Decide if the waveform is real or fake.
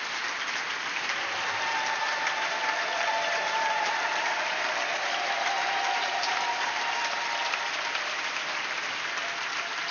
fake